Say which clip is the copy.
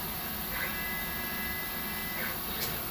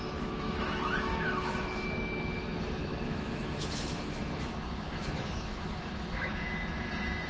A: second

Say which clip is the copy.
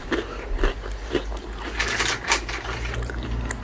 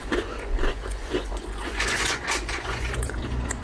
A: second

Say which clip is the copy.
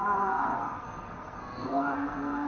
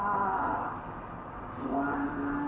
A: first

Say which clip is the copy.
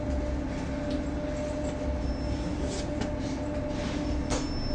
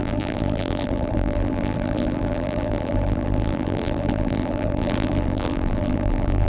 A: second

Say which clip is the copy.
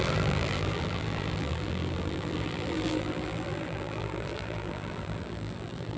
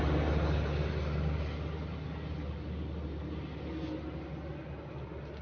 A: first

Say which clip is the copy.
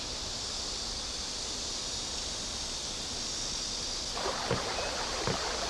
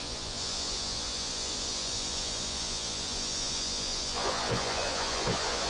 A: second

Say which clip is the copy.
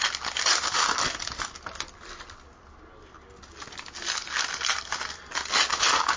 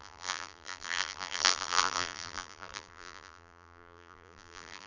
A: second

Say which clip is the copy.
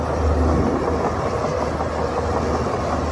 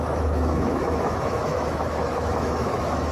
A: second